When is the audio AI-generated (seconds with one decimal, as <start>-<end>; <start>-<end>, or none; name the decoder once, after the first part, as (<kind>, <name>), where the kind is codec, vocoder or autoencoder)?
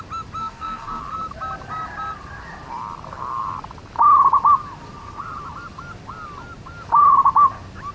0.4-1.0 (codec, SNAC)